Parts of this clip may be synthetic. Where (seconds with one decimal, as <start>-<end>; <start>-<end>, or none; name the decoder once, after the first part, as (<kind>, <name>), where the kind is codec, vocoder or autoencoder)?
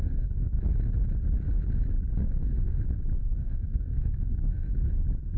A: 0.0-0.6 (codec, SNAC); 2.2-2.8; 3.2-4.7